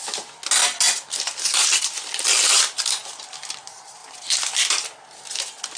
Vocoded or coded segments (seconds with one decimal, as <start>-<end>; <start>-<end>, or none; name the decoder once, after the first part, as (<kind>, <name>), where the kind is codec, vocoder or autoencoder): none